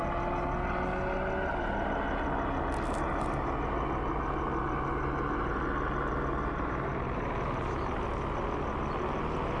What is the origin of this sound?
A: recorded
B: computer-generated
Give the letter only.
A